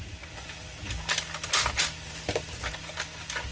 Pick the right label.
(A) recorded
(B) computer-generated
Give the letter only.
A